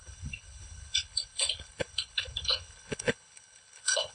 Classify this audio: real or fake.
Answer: fake